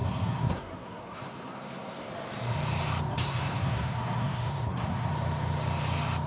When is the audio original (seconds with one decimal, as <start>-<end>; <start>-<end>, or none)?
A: 2.1-3.1; 5.1-6.3